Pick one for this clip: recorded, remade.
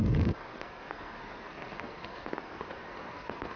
remade